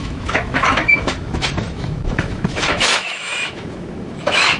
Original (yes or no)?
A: no